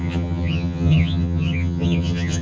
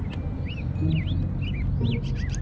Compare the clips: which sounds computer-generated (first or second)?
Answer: first